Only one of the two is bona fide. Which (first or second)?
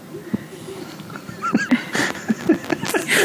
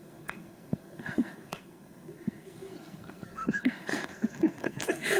first